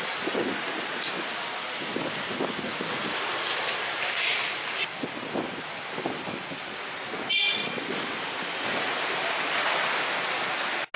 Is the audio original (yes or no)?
yes